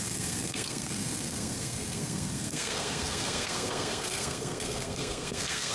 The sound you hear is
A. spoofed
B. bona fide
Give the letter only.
A